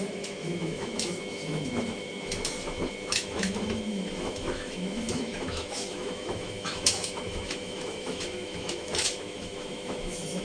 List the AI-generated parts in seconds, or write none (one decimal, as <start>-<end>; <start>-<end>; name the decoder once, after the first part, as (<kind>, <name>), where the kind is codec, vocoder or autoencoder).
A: 0.0-10.4 (autoencoder, DAC-VAE)